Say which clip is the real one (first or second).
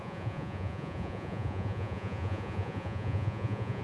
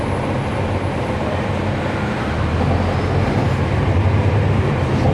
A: second